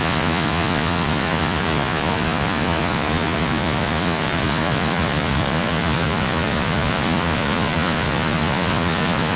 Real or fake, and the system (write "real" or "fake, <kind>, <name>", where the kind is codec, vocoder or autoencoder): fake, vocoder, Vocos